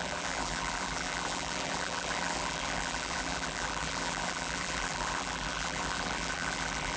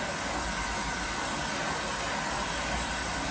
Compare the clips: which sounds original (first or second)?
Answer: second